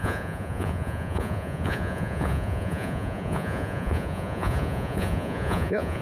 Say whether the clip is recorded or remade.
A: remade